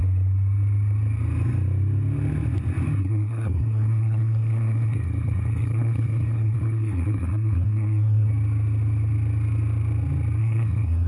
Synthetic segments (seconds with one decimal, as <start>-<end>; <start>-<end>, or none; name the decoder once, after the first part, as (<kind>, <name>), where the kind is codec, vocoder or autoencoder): 3.0-8.3 (codec, SNAC); 10.4-11.1